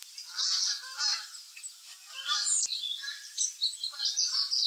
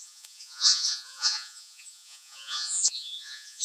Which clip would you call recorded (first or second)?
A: first